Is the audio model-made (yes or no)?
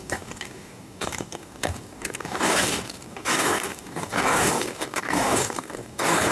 yes